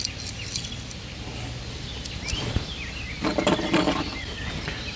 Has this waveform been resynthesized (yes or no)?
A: no